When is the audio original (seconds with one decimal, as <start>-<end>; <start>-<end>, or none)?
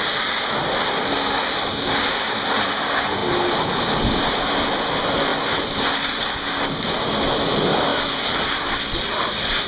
0.0-9.7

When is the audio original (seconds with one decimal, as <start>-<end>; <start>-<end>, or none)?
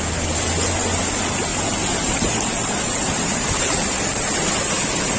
0.0-5.2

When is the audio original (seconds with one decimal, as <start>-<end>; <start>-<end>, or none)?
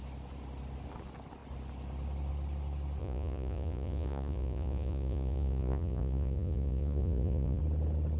0.0-3.0; 7.6-8.2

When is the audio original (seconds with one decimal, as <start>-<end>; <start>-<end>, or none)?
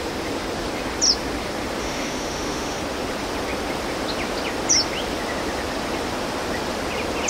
0.0-1.8; 2.8-7.3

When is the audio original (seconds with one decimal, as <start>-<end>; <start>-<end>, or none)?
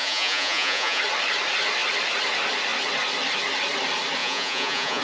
1.0-4.2